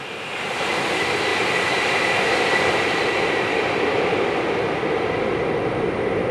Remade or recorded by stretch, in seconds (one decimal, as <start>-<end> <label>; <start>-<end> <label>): 0.0-1.3 recorded; 1.3-5.1 remade; 5.1-6.3 recorded